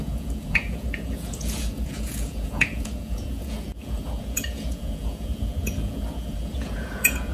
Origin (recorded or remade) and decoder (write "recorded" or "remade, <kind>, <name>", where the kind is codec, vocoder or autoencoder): remade, vocoder, Vocos